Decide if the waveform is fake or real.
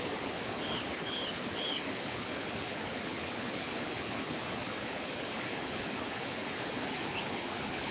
fake